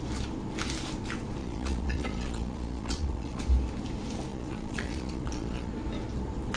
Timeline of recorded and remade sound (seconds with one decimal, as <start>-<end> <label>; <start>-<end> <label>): 0.0-1.4 recorded; 1.4-3.4 remade; 3.4-4.3 recorded; 4.3-5.7 remade; 5.7-6.6 recorded